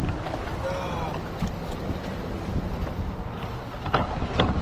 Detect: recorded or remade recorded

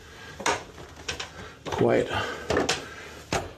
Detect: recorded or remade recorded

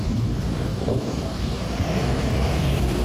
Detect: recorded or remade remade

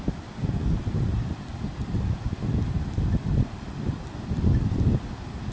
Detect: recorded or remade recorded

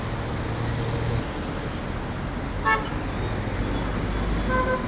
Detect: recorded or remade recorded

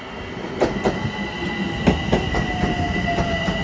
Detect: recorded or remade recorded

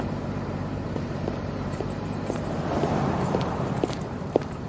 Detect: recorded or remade remade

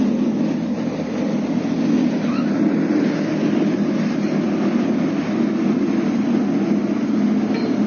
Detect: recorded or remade recorded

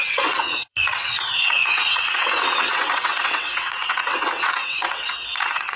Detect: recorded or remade remade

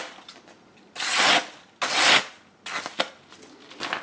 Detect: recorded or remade recorded